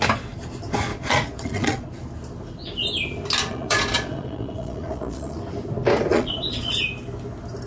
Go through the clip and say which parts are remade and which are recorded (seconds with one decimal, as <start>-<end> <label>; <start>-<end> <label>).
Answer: 0.0-0.9 recorded; 0.9-1.9 remade; 1.9-3.5 recorded; 3.5-5.4 remade; 5.4-6.1 recorded; 6.1-6.7 remade; 6.7-7.7 recorded